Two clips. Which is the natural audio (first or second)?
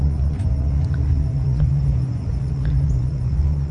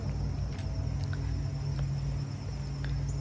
second